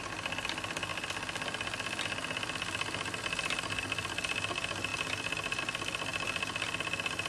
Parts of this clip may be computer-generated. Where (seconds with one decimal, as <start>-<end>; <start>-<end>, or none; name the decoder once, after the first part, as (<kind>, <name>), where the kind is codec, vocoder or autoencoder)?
none